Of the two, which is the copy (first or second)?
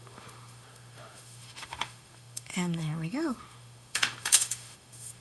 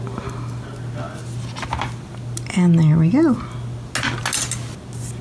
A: first